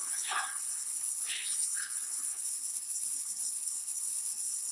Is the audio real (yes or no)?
no